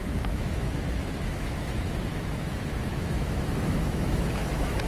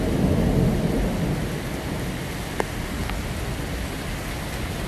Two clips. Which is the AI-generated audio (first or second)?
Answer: first